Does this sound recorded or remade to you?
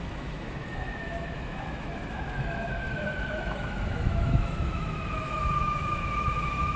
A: remade